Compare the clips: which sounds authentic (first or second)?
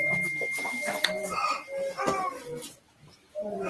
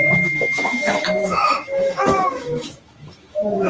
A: first